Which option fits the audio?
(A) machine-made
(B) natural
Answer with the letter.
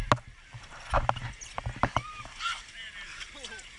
B